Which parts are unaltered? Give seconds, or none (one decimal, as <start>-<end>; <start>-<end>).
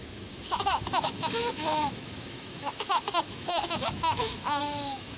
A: none